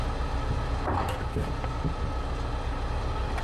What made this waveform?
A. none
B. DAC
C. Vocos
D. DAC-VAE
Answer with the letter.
A